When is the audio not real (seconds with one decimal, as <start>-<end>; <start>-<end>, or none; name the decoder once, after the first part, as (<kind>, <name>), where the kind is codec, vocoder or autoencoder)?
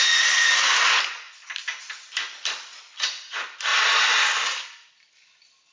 none